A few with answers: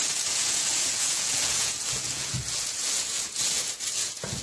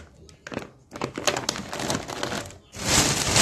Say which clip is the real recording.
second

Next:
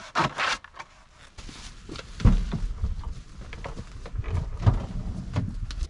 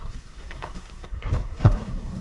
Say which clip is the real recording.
first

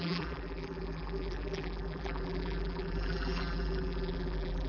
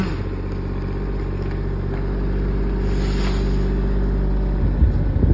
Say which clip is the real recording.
second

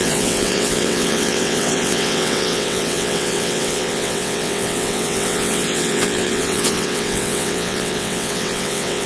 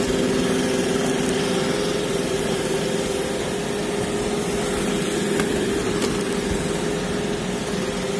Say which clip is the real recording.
second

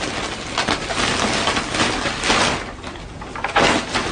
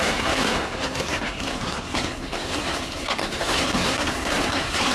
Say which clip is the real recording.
first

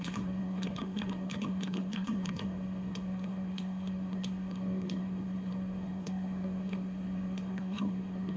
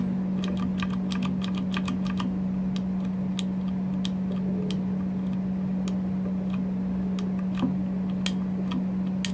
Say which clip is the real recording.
second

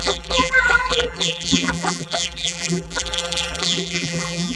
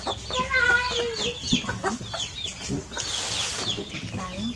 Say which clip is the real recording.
second